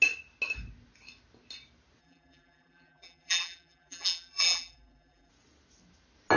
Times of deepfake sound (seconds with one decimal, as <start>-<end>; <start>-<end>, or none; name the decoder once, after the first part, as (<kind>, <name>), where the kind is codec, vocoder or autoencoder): 2.0-5.3 (vocoder, BigVGAN v2)